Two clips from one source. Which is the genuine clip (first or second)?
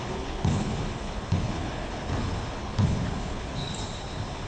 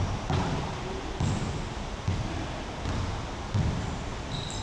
second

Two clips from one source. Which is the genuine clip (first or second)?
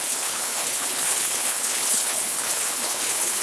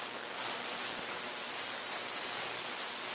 second